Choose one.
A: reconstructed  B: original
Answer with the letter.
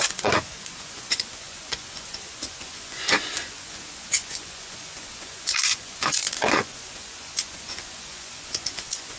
A